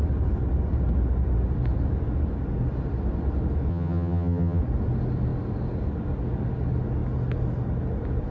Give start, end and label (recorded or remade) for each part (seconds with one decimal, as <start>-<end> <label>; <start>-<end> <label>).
0.0-3.7 recorded; 3.7-4.6 remade; 4.6-8.3 recorded